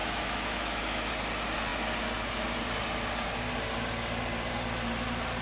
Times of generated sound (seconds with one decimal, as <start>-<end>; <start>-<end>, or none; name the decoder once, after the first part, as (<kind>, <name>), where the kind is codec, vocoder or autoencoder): 0.0-1.1 (autoencoder, DAC-VAE)